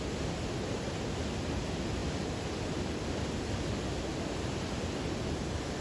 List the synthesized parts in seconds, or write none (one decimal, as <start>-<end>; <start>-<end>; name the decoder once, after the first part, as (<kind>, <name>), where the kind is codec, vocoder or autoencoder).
none